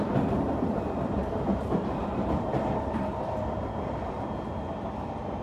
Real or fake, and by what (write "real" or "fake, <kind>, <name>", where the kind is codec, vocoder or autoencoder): fake, vocoder, BigVGAN v2